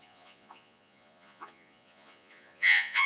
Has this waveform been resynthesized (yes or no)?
yes